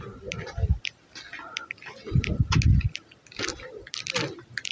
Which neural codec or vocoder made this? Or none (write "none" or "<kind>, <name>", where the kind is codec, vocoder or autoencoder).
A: none